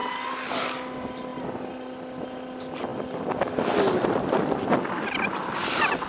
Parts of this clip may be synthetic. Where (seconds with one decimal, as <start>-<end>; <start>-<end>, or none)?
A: none